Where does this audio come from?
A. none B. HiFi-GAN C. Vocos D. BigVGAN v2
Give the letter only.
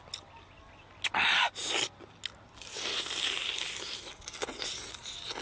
A